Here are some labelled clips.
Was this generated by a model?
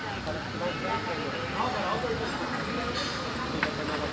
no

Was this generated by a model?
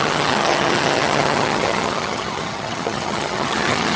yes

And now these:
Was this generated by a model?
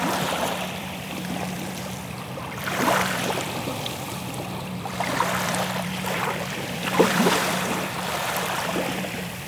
yes